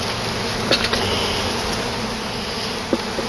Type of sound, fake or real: real